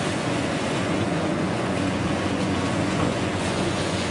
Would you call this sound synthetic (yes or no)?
yes